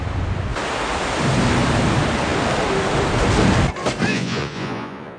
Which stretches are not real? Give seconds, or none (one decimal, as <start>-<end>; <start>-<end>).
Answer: 4.1-5.2